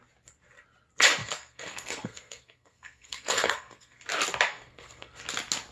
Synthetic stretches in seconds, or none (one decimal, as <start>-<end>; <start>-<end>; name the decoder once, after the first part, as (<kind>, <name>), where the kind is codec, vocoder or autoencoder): 1.2-4.0 (codec, SNAC); 4.5-5.2